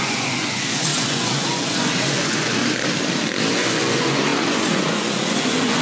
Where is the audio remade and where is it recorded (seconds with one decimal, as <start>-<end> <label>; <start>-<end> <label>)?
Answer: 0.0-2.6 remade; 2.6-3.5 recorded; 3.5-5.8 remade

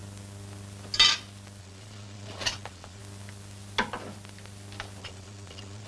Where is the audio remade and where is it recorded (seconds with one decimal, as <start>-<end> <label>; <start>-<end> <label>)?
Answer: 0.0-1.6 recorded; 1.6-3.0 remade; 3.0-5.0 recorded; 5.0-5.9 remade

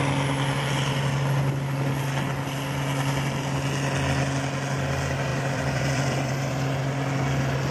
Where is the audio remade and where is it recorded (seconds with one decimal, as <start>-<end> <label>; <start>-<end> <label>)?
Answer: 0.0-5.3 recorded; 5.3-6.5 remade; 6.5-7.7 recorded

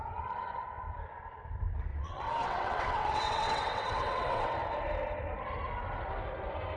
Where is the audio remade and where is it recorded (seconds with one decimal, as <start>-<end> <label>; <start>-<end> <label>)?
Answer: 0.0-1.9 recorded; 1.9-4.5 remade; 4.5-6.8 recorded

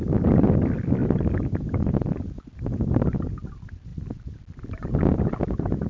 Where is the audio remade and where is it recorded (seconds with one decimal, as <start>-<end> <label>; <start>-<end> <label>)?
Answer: 0.0-5.9 recorded

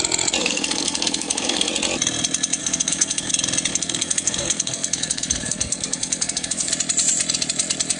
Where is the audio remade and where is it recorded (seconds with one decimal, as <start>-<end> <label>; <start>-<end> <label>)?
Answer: 0.0-0.4 recorded; 0.4-1.7 remade; 1.7-2.6 recorded; 2.6-3.3 remade; 3.3-3.7 recorded; 3.7-6.7 remade; 6.7-8.0 recorded

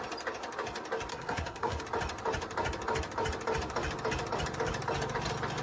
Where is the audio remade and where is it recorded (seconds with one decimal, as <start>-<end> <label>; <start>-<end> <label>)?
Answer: 0.0-1.1 recorded; 1.1-1.8 remade; 1.8-5.6 recorded